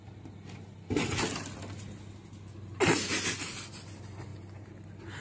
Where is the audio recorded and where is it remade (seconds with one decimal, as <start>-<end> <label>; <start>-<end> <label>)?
0.0-5.2 recorded